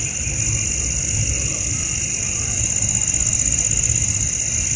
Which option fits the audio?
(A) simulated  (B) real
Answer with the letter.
B